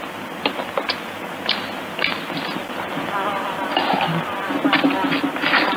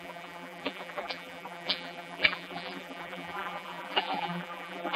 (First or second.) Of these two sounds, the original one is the first